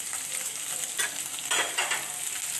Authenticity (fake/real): real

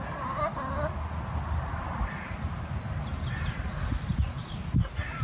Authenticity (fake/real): real